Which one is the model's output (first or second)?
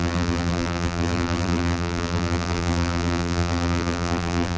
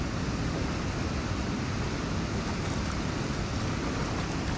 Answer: first